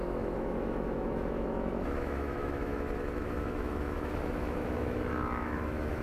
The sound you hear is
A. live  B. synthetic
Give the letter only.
B